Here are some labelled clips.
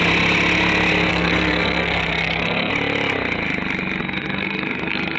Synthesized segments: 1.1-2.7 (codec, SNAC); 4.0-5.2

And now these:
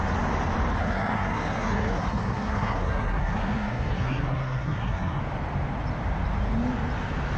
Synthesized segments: 0.8-5.2 (codec, SNAC)

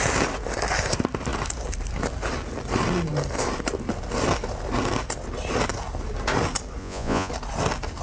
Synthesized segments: 6.8-7.3 (vocoder, Vocos)

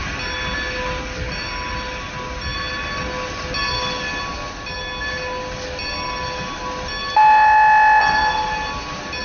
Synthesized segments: none